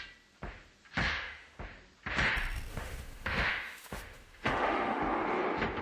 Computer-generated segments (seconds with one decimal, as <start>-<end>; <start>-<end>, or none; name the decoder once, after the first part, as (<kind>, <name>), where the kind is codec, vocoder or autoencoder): 1.0-1.6 (autoencoder, DAC-VAE); 2.7-5.0